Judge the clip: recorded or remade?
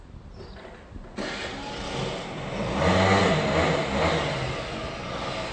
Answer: recorded